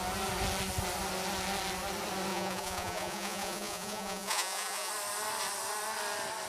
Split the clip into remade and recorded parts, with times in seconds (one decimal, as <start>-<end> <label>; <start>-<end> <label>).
0.0-2.3 recorded; 2.3-4.9 remade; 4.9-6.5 recorded